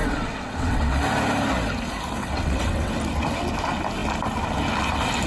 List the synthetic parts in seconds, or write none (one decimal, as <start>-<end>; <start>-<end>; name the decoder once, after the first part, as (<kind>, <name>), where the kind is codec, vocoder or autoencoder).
0.0-1.0 (vocoder, WaveNeXt); 2.2-2.9